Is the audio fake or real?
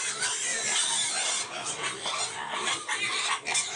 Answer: real